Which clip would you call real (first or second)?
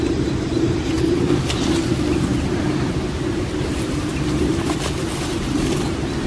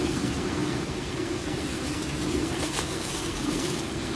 first